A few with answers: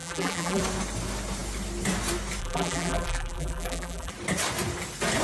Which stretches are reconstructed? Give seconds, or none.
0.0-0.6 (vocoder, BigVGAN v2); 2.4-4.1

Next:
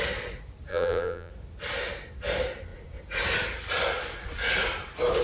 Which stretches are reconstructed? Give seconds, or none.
0.7-1.3 (vocoder, BigVGAN v2)

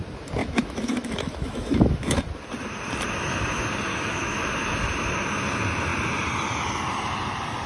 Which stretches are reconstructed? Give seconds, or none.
0.4-2.2 (autoencoder, DAC-VAE); 3.9-4.5